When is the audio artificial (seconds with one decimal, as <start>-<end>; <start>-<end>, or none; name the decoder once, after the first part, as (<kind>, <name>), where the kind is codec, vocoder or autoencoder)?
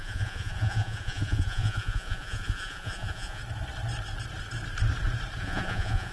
0.0-3.4 (vocoder, Vocos); 5.4-6.1